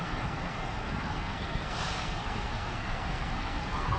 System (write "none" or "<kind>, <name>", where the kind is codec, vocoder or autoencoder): codec, SNAC